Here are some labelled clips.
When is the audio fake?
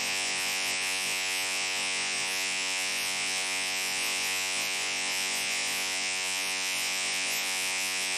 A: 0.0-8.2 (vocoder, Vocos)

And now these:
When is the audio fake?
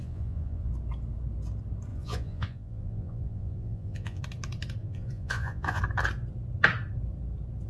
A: 0.0-0.7 (vocoder, Vocos); 1.9-4.2; 4.8-5.8